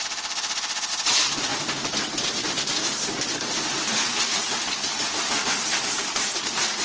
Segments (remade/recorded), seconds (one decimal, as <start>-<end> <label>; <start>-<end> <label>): 0.0-6.8 recorded